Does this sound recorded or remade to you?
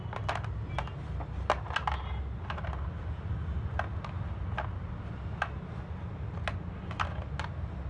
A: recorded